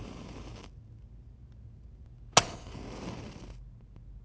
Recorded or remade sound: recorded